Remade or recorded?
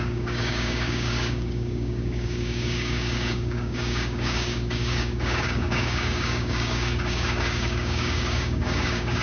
remade